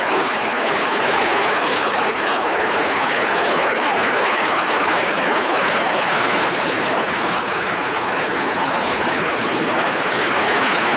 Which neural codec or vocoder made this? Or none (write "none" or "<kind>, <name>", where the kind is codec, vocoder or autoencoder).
codec, HILCodec